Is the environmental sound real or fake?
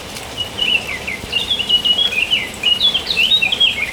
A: fake